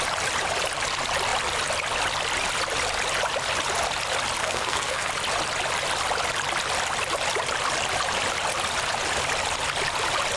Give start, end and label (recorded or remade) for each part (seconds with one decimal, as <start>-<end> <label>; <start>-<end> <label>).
0.0-4.4 recorded; 4.4-5.1 remade; 5.1-10.4 recorded